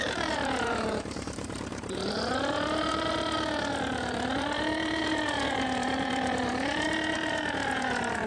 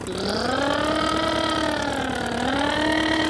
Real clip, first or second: second